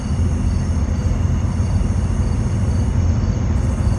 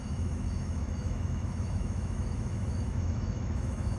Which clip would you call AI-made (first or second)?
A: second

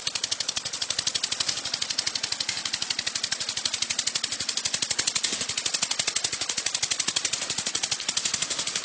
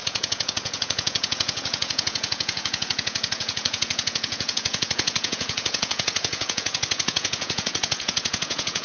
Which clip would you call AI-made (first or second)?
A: second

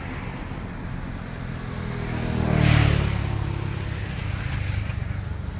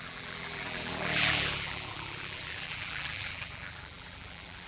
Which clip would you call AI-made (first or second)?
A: second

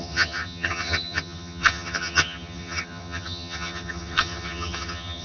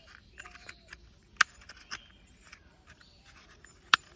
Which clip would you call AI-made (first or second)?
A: first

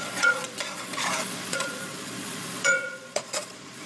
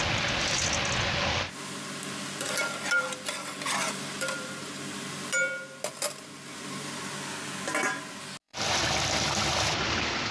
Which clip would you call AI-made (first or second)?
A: first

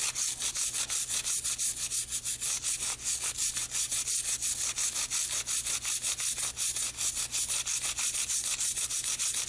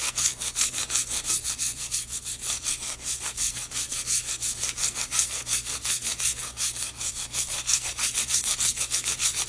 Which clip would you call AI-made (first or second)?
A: second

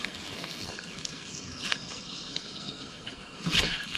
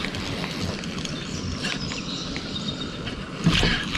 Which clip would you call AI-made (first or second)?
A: first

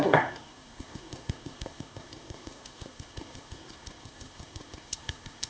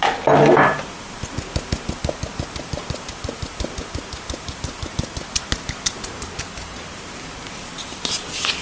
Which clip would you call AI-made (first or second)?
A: first